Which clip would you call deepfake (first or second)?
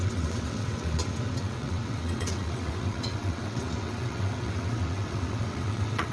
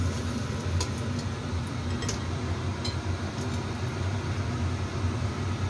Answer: first